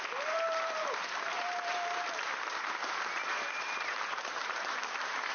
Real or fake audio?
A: fake